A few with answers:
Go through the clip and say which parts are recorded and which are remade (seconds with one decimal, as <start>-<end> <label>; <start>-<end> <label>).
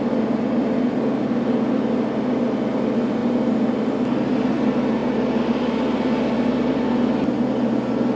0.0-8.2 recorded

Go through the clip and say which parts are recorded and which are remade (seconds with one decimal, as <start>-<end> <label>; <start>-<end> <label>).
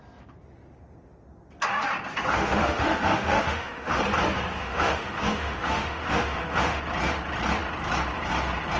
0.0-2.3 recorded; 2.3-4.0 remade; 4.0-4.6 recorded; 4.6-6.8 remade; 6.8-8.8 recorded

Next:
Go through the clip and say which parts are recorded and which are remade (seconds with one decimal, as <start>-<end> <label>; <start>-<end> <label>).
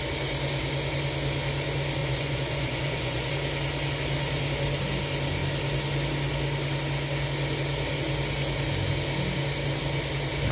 0.0-2.0 recorded; 2.0-3.3 remade; 3.3-10.5 recorded